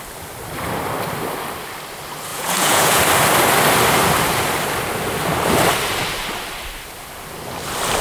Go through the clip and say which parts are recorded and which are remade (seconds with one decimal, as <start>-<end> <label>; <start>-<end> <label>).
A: 0.0-2.3 recorded; 2.3-3.0 remade; 3.0-8.0 recorded